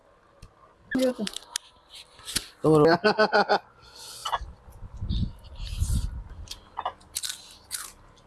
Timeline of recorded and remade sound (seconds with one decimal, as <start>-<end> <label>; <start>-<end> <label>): 0.0-8.3 recorded